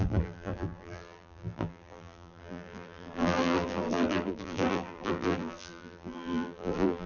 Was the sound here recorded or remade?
remade